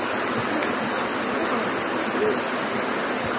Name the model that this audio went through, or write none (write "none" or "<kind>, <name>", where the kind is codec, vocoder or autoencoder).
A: none